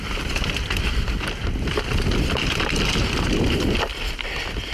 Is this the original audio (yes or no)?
yes